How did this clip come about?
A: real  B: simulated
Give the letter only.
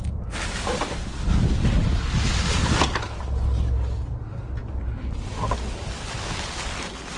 A